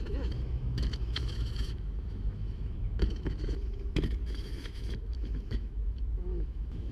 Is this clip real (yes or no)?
no